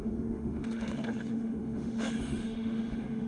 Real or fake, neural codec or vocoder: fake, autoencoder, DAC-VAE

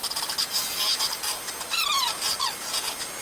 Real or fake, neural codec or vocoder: real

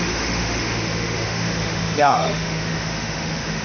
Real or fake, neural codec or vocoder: fake, autoencoder, DAC-VAE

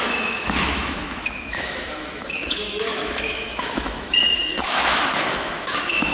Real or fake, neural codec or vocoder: fake, autoencoder, DAC-VAE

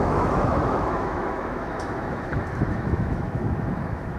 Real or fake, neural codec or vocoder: fake, autoencoder, DAC-VAE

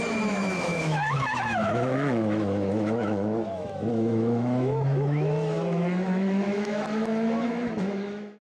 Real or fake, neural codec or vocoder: fake, autoencoder, DAC-VAE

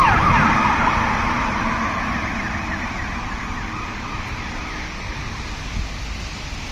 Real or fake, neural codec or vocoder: real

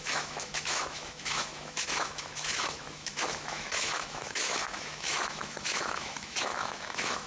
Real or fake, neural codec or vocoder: fake, autoencoder, DAC-VAE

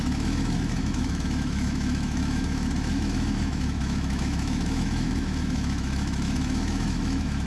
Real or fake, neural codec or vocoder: fake, autoencoder, DAC-VAE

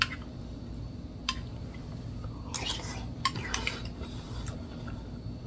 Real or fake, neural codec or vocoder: real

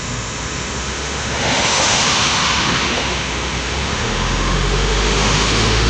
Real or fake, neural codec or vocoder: fake, autoencoder, DAC-VAE